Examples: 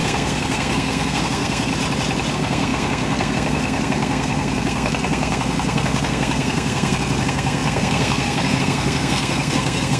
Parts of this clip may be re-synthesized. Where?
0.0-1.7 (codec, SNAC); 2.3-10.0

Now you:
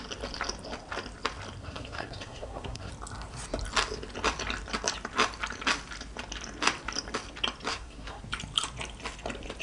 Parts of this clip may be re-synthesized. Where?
1.6-2.9 (codec, SNAC); 7.7-8.2

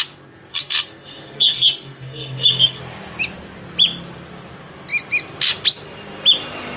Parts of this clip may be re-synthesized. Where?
0.5-2.8 (codec, SNAC)

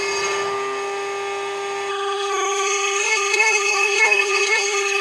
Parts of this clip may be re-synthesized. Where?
1.9-5.0 (codec, SNAC)